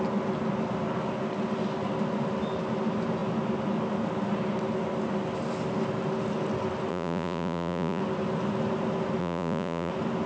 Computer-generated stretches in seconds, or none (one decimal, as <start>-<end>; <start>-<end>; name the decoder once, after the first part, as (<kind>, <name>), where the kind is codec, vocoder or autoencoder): 6.9-8.0 (vocoder, Vocos); 9.2-9.9